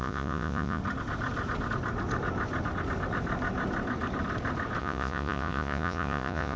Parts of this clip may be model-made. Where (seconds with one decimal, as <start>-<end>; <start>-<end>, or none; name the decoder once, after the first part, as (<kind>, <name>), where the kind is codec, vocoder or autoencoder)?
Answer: 0.0-0.8 (vocoder, Vocos); 4.8-6.6